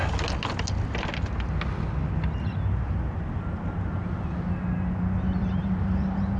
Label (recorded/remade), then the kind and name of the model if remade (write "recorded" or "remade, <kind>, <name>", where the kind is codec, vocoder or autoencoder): recorded